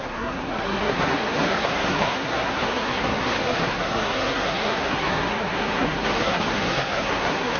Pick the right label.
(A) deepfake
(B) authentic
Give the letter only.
A